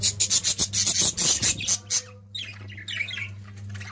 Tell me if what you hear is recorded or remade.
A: recorded